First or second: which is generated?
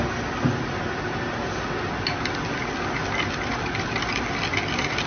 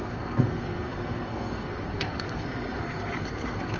second